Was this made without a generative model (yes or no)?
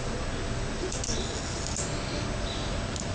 yes